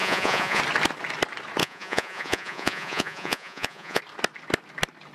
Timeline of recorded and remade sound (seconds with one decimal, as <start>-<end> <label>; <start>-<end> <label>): 0.0-0.6 remade; 0.6-1.6 recorded; 1.6-4.0 remade; 4.0-5.1 recorded